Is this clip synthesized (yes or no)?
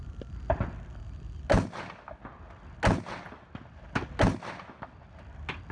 no